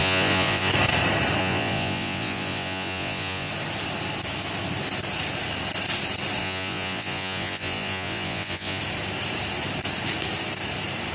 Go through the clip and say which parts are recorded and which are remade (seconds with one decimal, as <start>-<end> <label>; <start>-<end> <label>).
0.0-0.7 remade; 0.7-1.4 recorded; 1.4-3.5 remade; 3.5-6.4 recorded; 6.4-8.8 remade; 8.8-11.1 recorded